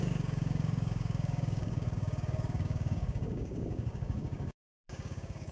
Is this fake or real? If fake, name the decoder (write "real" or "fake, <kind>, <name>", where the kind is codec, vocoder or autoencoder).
fake, codec, DAC